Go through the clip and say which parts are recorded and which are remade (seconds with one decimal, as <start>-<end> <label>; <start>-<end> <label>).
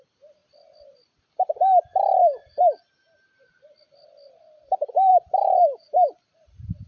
0.0-2.4 recorded; 2.4-3.5 remade; 3.5-5.1 recorded; 5.1-6.9 remade